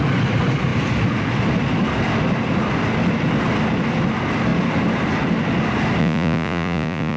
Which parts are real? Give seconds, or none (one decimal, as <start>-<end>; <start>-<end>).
0.0-6.0